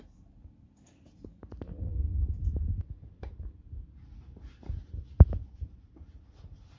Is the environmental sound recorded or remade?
recorded